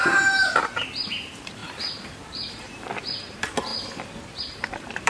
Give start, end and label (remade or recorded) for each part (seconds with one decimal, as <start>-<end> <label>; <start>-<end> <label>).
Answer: 0.0-1.6 remade; 1.6-2.3 recorded; 2.3-3.7 remade; 3.7-4.4 recorded; 4.4-5.1 remade